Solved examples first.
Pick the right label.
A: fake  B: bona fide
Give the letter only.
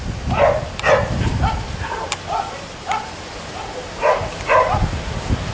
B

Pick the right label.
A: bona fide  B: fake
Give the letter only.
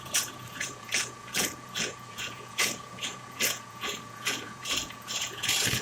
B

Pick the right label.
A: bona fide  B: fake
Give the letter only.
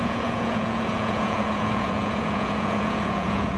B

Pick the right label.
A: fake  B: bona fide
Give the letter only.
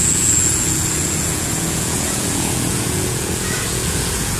A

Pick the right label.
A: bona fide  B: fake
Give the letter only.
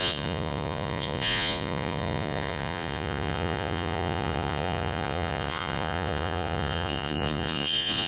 B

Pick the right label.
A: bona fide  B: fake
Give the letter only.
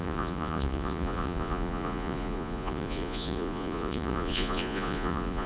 B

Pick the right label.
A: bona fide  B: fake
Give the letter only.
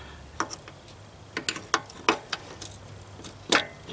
A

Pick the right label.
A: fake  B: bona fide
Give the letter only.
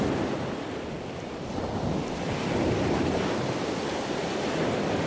B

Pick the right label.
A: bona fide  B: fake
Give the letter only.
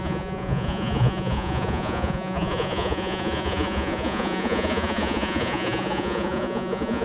B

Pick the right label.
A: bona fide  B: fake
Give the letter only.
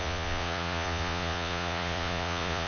B